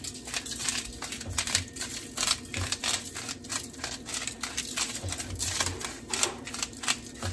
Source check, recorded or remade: remade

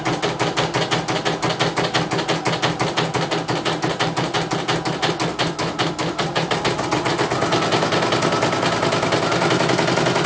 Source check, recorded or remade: recorded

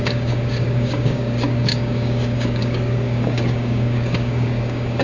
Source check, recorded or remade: remade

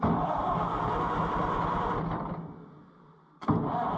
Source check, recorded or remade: recorded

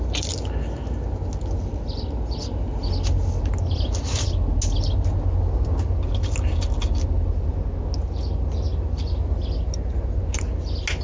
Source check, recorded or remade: recorded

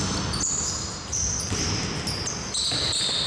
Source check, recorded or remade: recorded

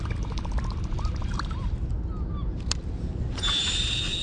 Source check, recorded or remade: recorded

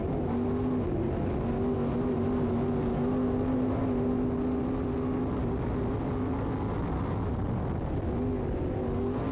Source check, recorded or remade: recorded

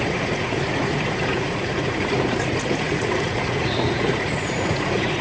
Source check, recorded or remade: remade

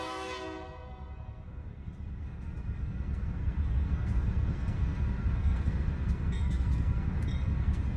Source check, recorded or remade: remade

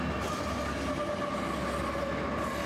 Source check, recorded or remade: recorded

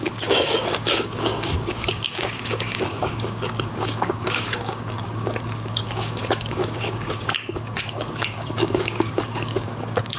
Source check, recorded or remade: remade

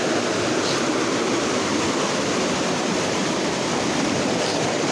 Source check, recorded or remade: recorded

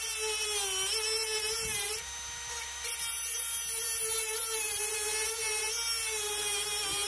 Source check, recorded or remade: recorded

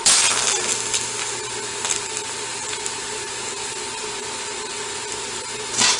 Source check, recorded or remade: recorded